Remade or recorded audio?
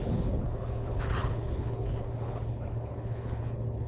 remade